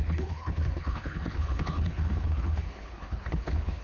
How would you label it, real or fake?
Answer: fake